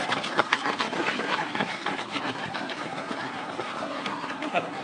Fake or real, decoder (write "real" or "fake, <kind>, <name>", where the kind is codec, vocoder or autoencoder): fake, codec, SNAC